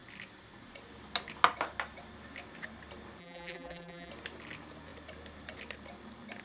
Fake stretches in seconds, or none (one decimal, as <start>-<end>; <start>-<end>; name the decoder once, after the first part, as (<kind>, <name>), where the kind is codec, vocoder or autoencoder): 3.2-4.1 (vocoder, BigVGAN v2)